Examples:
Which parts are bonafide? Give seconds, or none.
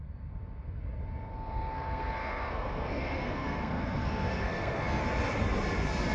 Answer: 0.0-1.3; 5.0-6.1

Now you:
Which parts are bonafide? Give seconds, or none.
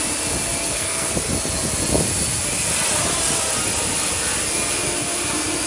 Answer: 0.0-0.6; 1.1-5.7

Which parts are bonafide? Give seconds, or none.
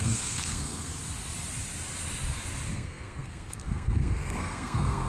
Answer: 0.9-2.7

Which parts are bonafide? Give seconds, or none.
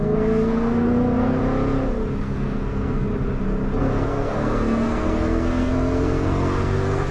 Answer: 1.4-2.2; 3.1-3.8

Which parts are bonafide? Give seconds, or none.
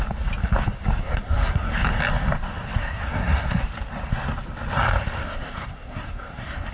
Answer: 0.0-1.0; 1.7-2.8; 3.6-5.2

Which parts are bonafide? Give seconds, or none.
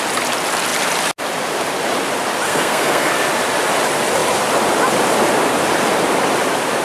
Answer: 0.0-2.5; 3.1-6.8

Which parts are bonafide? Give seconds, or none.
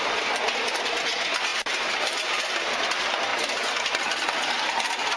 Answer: 0.0-5.2